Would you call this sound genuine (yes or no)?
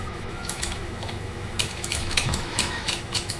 no